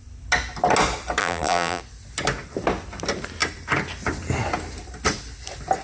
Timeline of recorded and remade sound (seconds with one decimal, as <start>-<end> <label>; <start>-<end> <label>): 0.0-1.2 recorded; 1.2-1.8 remade; 1.8-5.8 recorded

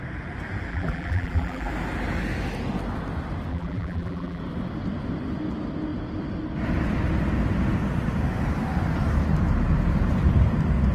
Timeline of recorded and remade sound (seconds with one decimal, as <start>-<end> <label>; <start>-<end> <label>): 0.0-0.7 recorded; 0.7-1.7 remade; 1.7-3.5 recorded; 3.5-4.4 remade; 4.4-10.9 recorded

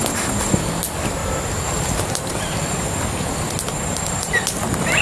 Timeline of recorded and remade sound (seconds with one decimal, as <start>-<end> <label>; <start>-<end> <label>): 0.0-1.2 recorded; 1.2-3.0 remade; 3.0-5.0 recorded

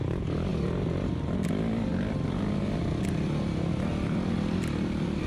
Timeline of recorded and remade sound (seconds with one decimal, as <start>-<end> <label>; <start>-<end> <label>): 0.0-5.3 recorded

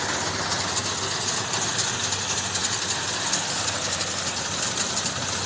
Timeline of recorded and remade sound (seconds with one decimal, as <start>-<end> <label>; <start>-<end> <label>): 0.0-5.5 recorded

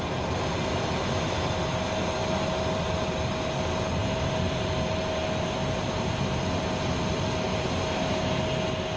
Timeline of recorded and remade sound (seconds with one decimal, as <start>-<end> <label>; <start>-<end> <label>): 0.0-4.0 recorded; 4.0-4.7 remade; 4.7-5.6 recorded; 5.6-6.3 remade; 6.3-7.5 recorded; 7.5-8.4 remade; 8.4-9.0 recorded

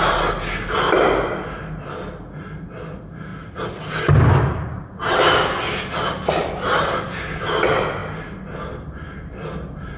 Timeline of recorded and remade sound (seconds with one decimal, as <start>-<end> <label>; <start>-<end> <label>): 0.0-10.0 recorded